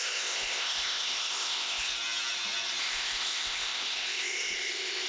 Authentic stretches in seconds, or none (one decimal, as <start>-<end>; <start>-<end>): 1.9-2.8